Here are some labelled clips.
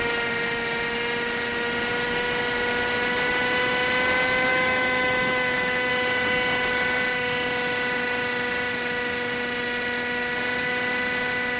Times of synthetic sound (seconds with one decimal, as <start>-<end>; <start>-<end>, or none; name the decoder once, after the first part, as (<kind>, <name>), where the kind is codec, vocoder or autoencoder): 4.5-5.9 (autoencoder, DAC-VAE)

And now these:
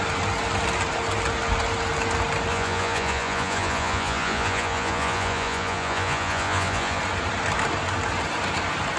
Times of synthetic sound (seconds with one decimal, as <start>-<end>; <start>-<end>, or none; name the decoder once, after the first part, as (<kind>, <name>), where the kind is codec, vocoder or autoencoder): 2.5-7.0 (vocoder, Vocos)

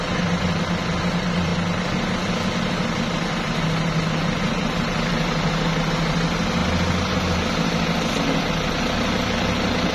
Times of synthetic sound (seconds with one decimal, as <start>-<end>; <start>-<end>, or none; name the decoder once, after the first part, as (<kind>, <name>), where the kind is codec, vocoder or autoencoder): none